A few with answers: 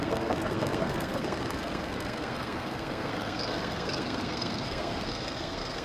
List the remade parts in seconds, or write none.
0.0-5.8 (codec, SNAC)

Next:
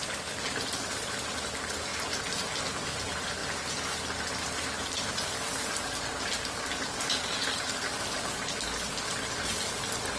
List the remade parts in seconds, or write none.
none

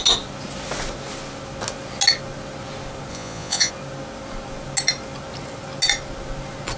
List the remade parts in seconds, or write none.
3.1-3.7 (vocoder, Vocos)

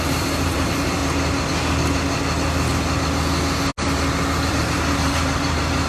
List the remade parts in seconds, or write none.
0.0-1.0 (vocoder, BigVGAN v2); 4.5-5.9